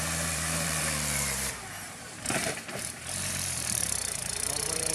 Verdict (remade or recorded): remade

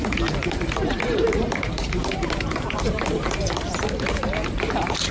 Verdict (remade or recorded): remade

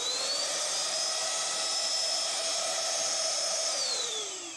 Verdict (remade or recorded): remade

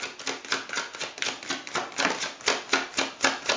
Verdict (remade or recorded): recorded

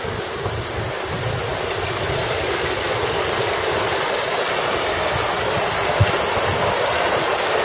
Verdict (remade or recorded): recorded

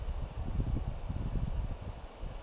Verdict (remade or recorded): recorded